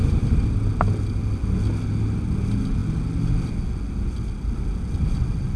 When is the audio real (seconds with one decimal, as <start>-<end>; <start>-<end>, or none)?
0.0-5.6